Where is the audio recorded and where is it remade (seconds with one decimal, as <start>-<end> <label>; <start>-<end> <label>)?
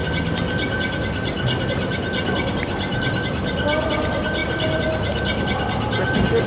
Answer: 0.0-6.5 recorded